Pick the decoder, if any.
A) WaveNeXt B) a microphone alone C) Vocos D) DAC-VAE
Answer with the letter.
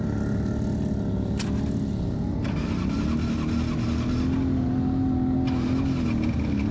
B